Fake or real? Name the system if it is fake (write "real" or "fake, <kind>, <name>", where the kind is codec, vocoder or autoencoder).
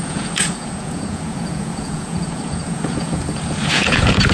fake, vocoder, Vocos